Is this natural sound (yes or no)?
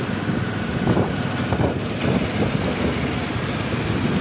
yes